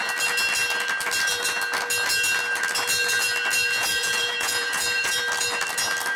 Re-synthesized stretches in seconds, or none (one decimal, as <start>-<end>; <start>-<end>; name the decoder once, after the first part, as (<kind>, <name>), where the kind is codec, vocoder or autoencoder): 3.6-5.2 (vocoder, Vocos)